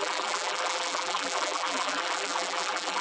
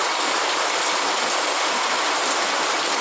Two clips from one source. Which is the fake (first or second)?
first